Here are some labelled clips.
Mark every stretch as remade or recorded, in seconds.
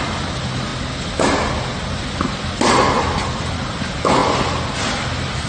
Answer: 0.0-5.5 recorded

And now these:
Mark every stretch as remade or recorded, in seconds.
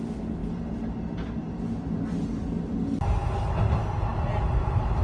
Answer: 0.0-5.0 recorded